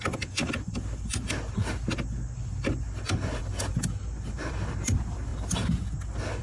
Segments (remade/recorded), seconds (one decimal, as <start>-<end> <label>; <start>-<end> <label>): 0.0-6.4 recorded